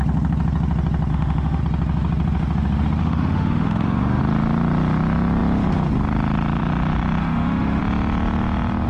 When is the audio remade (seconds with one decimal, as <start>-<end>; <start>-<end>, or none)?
1.1-1.6; 3.0-4.2; 7.2-7.8